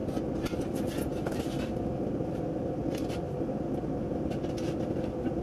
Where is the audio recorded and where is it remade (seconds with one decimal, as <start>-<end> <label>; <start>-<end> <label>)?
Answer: 0.0-5.4 recorded